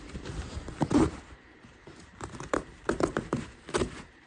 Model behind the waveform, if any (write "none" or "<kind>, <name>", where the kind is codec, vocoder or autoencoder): vocoder, BigVGAN v2